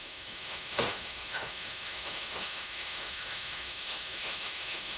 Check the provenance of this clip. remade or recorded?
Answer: remade